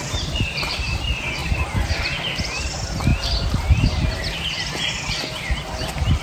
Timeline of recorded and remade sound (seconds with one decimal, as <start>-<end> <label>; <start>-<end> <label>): 0.0-6.2 recorded